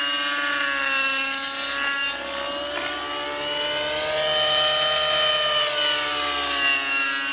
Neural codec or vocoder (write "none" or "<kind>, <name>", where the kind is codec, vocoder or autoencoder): none